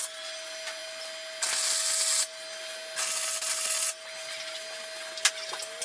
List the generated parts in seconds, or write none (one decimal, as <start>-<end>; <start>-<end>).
none